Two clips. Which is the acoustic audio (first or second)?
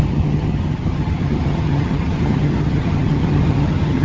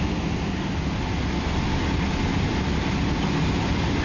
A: second